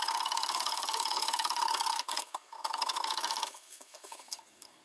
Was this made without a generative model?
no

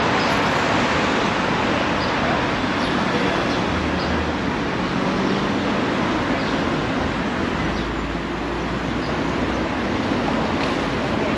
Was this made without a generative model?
yes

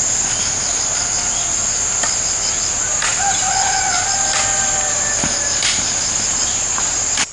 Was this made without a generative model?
yes